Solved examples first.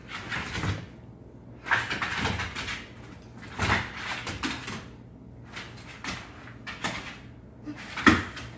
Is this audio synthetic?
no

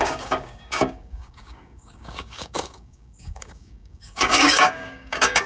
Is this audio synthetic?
yes